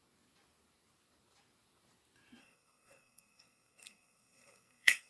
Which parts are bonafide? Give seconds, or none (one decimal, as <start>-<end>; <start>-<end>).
0.0-2.4